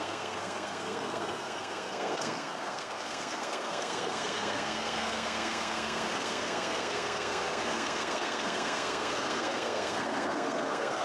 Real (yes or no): no